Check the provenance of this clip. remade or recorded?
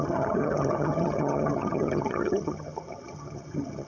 remade